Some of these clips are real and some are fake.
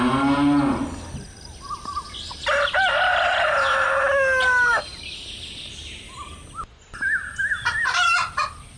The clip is real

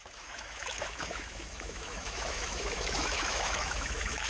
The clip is fake